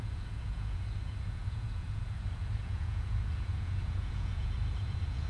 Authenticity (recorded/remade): remade